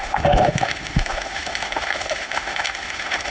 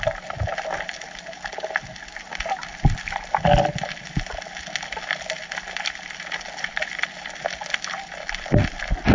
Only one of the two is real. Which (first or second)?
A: second